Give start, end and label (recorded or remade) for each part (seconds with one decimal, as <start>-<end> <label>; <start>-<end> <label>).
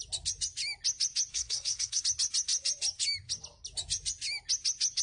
0.0-1.3 recorded; 1.3-2.0 remade; 2.0-5.0 recorded